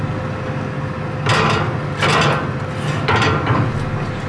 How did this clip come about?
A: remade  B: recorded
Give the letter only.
B